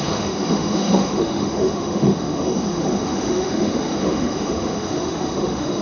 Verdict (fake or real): fake